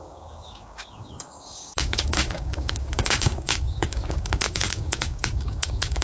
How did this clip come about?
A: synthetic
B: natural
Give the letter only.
A